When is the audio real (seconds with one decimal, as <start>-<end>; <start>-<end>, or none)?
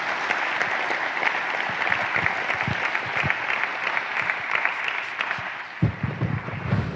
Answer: 0.0-7.0